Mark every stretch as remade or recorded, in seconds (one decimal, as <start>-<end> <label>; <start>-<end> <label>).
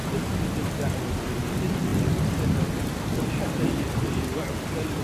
0.0-1.9 recorded; 1.9-5.0 remade